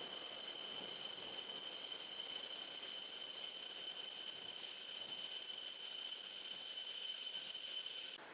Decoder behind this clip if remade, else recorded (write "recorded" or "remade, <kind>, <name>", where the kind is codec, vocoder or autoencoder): recorded